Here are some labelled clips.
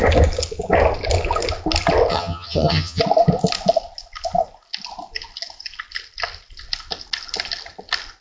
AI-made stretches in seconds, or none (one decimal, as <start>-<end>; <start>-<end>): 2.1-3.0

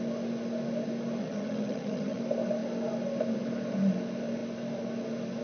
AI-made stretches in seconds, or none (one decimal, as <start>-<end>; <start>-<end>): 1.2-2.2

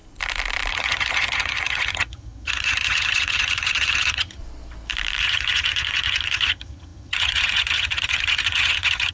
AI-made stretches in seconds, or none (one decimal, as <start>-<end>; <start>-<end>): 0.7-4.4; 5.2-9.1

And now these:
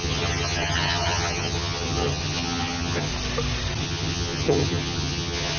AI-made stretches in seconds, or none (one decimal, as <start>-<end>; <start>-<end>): 0.0-3.1; 3.8-5.6

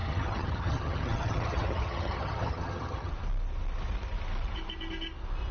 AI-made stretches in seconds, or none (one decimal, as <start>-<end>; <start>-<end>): 0.0-3.1

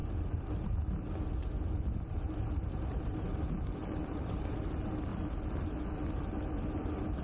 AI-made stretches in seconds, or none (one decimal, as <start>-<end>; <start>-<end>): none

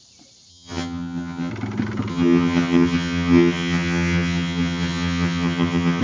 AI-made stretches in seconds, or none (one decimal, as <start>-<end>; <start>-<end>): 0.5-1.5; 2.1-6.0

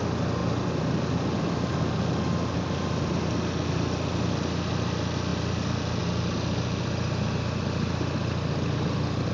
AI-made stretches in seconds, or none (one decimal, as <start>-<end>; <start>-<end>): none